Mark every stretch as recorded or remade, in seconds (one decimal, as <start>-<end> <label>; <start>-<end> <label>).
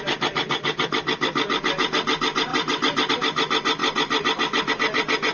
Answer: 0.0-2.5 recorded; 2.5-3.1 remade; 3.1-3.8 recorded; 3.8-4.7 remade; 4.7-5.3 recorded